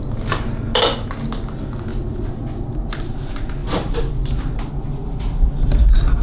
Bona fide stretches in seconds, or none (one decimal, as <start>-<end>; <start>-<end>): 0.0-6.2